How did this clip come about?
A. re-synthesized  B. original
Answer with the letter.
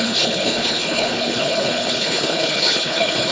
A